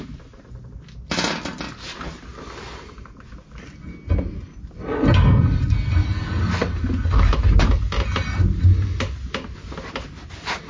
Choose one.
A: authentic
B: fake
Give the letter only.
A